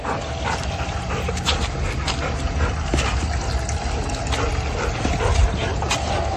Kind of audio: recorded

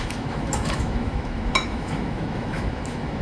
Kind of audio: remade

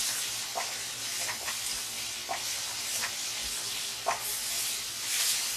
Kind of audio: recorded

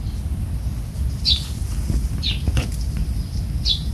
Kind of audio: recorded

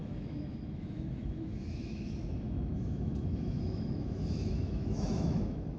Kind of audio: remade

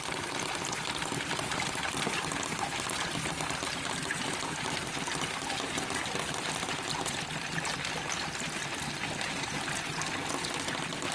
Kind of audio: recorded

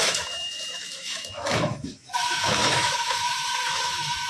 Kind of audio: remade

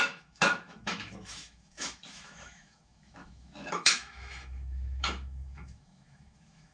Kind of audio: remade